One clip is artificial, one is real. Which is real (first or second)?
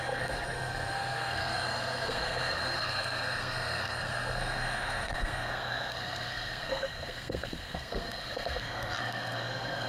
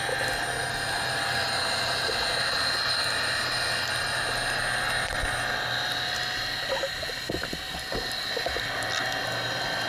second